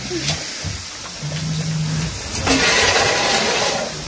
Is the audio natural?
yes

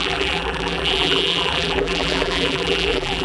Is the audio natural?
no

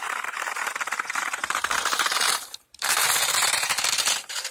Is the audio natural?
no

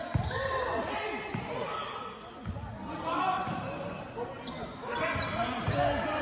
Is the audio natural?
yes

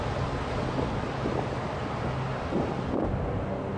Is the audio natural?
yes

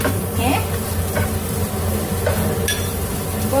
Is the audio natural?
yes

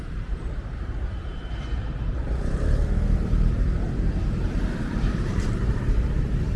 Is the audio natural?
no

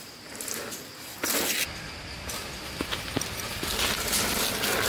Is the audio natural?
yes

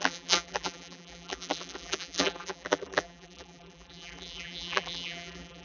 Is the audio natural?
no